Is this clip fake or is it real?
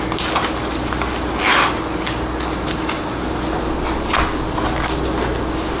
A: real